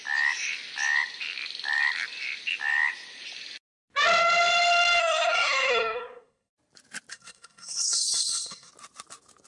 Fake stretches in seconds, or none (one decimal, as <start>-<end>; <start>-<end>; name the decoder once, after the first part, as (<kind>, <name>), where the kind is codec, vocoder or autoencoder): 5.0-6.5 (codec, SNAC); 7.1-8.7